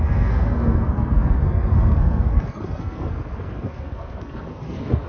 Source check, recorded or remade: remade